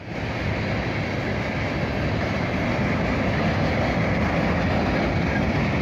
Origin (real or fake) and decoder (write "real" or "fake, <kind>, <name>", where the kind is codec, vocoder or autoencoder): real